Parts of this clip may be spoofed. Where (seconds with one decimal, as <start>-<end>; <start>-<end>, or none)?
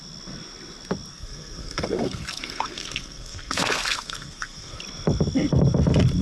1.1-4.8